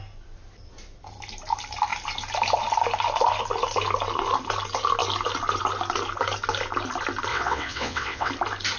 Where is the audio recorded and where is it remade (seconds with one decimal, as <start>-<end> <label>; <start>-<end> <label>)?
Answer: 0.0-7.3 recorded; 7.3-8.3 remade; 8.3-8.8 recorded